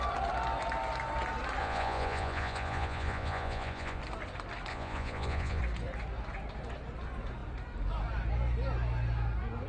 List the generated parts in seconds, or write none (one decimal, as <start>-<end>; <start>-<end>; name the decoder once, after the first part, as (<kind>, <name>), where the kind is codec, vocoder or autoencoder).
1.6-4.0 (vocoder, Vocos); 4.7-5.6